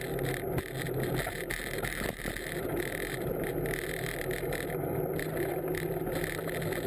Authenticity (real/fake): real